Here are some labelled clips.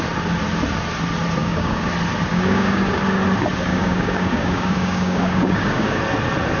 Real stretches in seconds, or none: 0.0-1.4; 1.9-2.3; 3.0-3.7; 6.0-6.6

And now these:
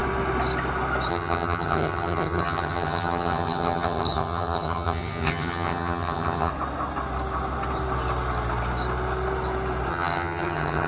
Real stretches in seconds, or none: 0.0-1.1; 6.5-9.9

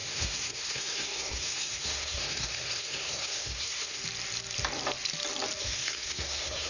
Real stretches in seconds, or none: 4.0-5.6